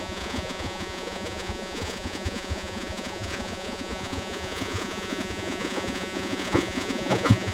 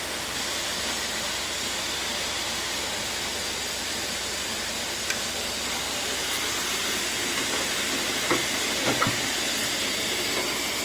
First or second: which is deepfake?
first